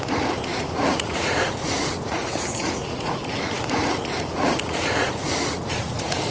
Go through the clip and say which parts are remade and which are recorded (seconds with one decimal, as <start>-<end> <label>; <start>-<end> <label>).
0.0-6.3 remade